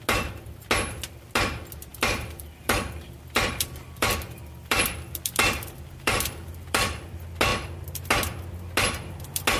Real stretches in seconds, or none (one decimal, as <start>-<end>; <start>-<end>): 0.0-1.9; 7.1-9.6